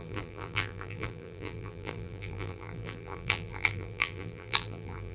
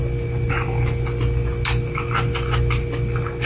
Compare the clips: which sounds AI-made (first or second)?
first